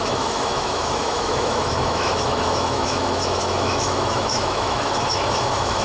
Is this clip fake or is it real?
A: fake